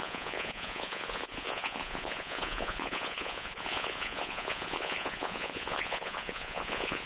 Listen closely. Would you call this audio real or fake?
fake